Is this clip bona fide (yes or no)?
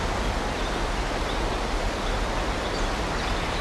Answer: yes